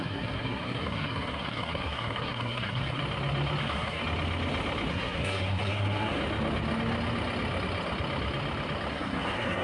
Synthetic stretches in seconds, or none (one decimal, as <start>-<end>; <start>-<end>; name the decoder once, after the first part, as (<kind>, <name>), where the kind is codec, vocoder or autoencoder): 0.0-3.0 (codec, SNAC); 3.6-4.0; 4.9-6.2; 8.9-9.6